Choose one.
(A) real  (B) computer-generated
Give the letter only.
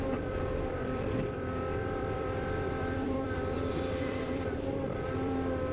B